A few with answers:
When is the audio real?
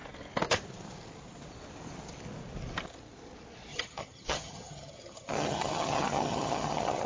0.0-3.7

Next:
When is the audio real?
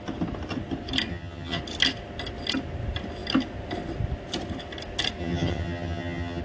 0.0-1.1; 1.6-5.2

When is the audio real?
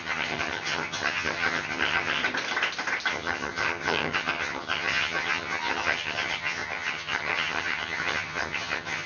2.2-3.1